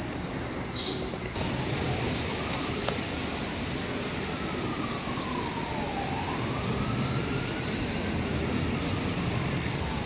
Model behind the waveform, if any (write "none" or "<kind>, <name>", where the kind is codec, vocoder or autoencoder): none